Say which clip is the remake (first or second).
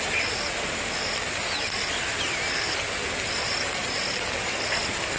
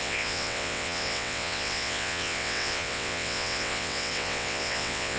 second